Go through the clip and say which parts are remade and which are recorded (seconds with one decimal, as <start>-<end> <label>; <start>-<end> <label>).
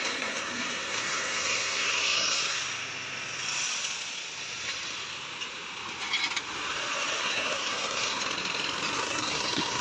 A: 0.0-2.6 remade; 2.6-7.2 recorded; 7.2-8.2 remade; 8.2-9.0 recorded; 9.0-9.8 remade